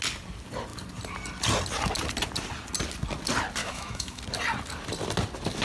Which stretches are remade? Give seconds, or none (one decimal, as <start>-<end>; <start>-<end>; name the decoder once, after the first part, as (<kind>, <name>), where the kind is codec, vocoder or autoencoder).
3.6-4.2 (autoencoder, DAC-VAE)